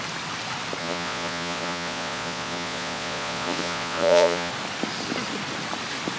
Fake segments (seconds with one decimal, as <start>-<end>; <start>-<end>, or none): 0.8-4.5